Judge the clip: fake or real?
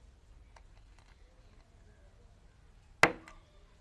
real